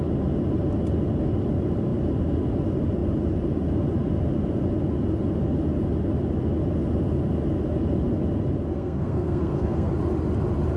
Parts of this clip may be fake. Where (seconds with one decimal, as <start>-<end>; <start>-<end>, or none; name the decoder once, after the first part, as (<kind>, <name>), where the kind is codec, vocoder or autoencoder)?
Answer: 8.7-9.9 (codec, SNAC)